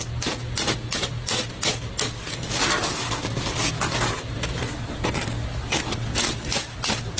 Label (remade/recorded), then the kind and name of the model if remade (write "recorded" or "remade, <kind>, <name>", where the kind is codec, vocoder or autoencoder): recorded